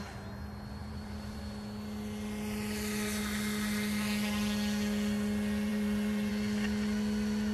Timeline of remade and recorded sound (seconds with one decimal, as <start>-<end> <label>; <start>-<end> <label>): 0.0-0.8 recorded; 0.8-1.4 remade; 1.4-5.7 recorded; 5.7-6.3 remade; 6.3-7.5 recorded